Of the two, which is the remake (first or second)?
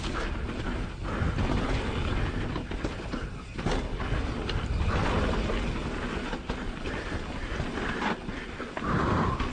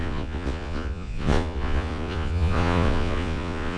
second